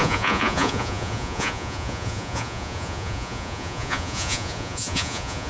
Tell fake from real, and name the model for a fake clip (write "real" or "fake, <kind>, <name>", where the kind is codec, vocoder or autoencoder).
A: fake, vocoder, Vocos